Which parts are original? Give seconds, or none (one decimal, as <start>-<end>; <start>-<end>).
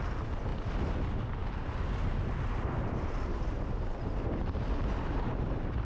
0.0-5.8